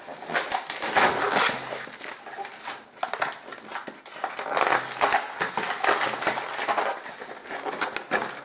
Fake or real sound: real